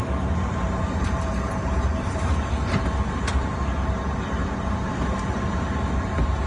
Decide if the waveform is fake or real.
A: fake